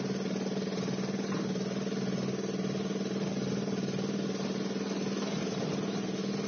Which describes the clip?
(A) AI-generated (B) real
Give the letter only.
B